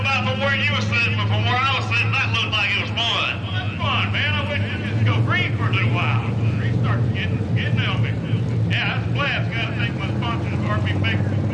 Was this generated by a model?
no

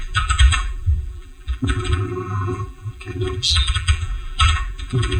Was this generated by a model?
yes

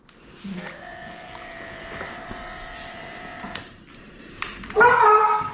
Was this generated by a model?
yes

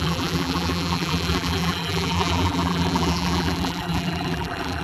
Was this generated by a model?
yes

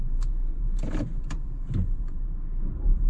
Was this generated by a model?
yes